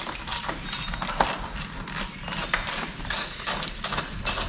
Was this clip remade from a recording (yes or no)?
no